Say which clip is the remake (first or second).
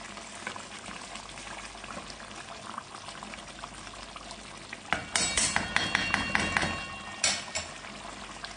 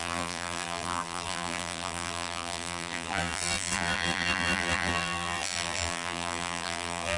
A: second